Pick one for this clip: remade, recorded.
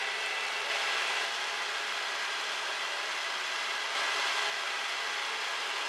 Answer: recorded